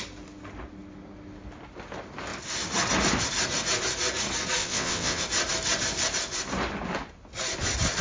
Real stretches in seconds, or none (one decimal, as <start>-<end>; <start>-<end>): 0.0-4.6; 5.2-8.0

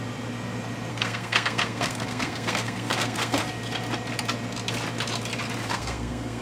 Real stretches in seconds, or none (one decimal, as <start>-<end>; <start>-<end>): 0.0-0.9; 3.4-5.7

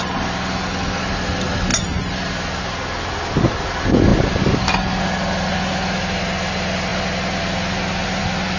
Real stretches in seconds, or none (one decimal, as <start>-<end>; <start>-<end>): 0.0-8.6

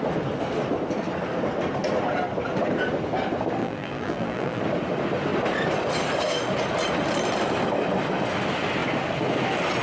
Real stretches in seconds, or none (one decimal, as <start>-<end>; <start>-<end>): 0.0-3.6; 4.6-9.8